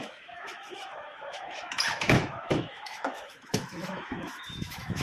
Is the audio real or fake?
fake